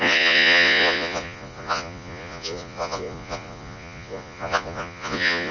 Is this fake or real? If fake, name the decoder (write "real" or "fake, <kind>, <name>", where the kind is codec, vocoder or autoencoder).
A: fake, vocoder, Vocos